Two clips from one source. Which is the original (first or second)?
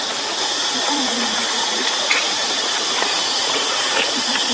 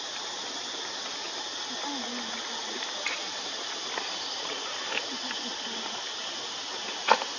second